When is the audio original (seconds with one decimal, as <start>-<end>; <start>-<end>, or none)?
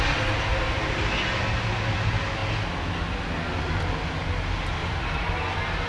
0.0-0.5; 1.0-4.8; 5.3-5.9